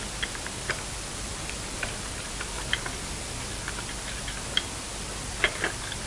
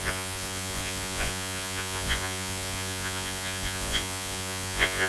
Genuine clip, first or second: first